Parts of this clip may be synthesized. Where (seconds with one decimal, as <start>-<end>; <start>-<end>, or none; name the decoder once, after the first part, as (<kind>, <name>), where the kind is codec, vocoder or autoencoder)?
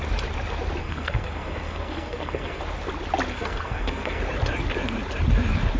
0.8-2.6 (codec, SNAC); 3.3-4.2